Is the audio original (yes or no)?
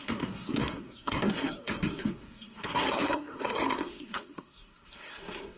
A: no